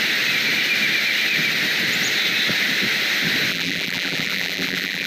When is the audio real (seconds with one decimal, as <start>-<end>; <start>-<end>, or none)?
0.0-3.5